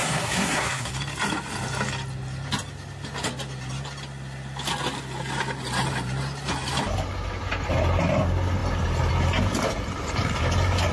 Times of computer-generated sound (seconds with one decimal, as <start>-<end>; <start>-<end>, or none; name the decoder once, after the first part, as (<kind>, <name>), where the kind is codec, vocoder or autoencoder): 0.0-0.9 (codec, SNAC)